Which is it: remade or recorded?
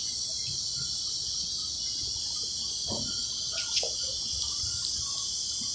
recorded